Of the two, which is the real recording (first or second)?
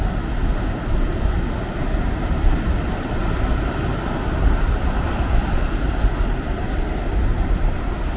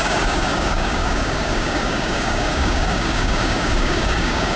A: first